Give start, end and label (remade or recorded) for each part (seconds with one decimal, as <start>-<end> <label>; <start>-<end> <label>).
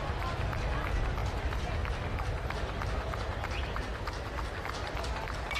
0.0-5.6 recorded